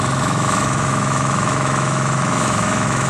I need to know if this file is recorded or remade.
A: remade